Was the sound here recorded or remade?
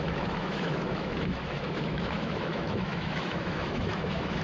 remade